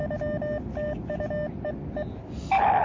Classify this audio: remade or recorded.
recorded